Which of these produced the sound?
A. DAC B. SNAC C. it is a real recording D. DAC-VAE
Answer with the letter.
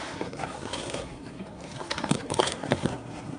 B